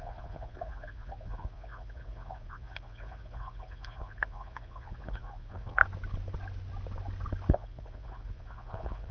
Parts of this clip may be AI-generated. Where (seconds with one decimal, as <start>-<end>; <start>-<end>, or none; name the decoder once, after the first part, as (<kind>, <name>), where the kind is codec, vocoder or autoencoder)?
0.0-5.8 (vocoder, Vocos); 7.5-9.1